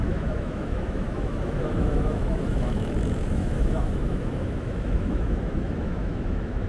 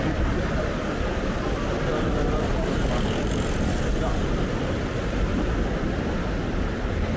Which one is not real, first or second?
first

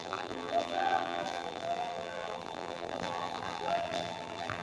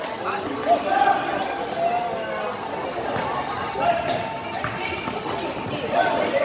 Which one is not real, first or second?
first